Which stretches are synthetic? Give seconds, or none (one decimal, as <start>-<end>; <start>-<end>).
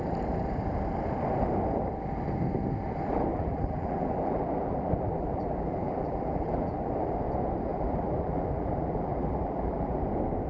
3.3-6.9; 7.7-10.0